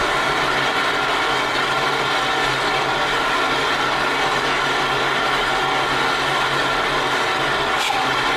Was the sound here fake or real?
real